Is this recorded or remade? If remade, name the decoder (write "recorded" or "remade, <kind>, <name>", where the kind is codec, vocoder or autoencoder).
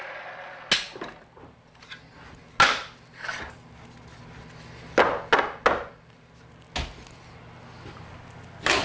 recorded